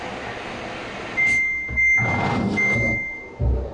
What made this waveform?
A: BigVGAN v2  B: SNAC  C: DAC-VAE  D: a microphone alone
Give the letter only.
D